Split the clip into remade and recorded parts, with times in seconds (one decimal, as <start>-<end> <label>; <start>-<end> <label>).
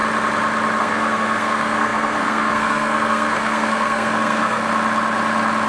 0.0-0.8 recorded; 0.8-4.6 remade; 4.6-5.7 recorded